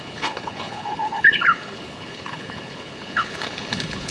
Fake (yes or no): yes